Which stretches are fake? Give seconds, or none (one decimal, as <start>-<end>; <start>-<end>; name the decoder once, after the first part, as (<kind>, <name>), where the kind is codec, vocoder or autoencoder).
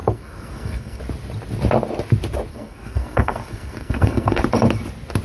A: 0.0-1.0 (codec, SNAC); 2.5-4.4